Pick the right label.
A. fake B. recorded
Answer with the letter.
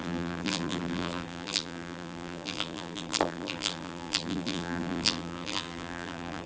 A